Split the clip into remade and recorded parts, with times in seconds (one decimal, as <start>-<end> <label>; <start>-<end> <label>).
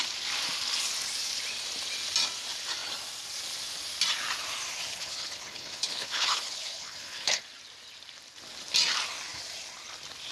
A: 0.0-4.9 recorded; 4.9-7.4 remade; 7.4-10.3 recorded